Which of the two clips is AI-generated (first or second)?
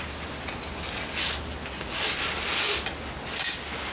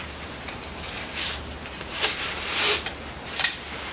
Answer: second